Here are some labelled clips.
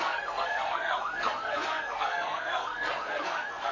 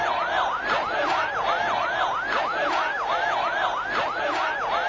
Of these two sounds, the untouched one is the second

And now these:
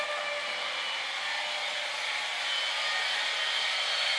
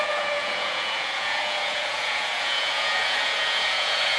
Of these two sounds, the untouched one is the first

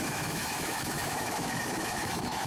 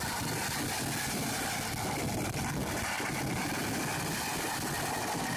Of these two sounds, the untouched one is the second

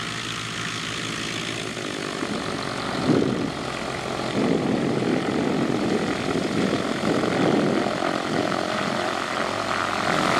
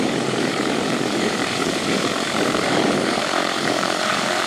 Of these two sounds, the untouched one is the first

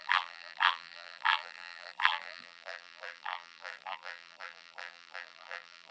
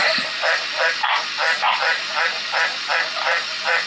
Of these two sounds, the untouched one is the second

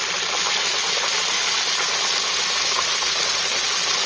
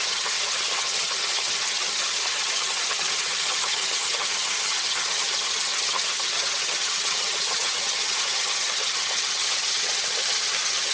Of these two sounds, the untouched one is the first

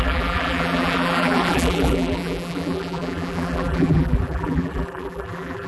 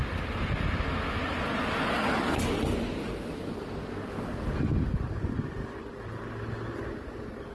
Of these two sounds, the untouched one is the second